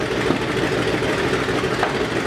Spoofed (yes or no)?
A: no